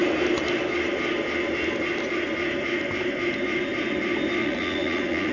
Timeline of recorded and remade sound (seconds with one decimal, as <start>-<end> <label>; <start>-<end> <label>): 0.0-4.4 recorded; 4.4-5.3 remade